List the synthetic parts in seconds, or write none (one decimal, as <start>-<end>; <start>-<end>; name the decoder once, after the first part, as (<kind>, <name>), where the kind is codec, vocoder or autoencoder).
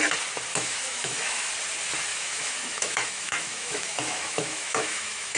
0.5-1.5 (autoencoder, DAC-VAE); 2.1-5.4